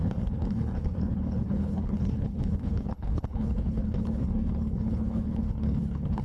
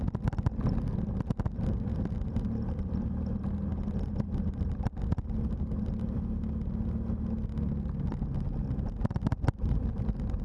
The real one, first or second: second